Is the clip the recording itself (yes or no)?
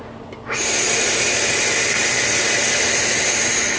yes